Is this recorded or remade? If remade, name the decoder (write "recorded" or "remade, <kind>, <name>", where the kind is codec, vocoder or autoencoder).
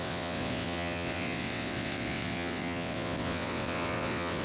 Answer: remade, vocoder, WaveNeXt